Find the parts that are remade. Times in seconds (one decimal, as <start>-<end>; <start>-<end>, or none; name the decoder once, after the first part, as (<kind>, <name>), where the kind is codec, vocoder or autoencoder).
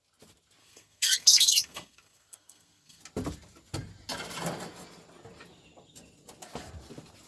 0.6-3.0 (codec, SNAC)